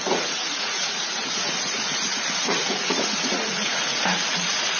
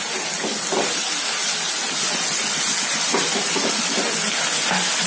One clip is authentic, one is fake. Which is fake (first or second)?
first